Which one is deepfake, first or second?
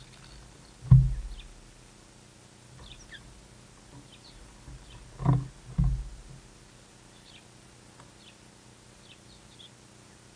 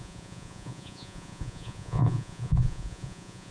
second